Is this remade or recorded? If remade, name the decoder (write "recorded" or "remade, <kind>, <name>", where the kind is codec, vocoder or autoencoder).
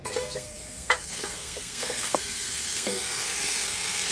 remade, codec, SNAC